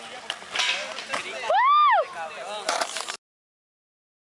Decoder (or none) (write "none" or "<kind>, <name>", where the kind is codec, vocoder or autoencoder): none